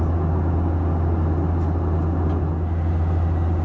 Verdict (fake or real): real